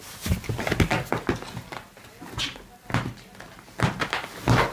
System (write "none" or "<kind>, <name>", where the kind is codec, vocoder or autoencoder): none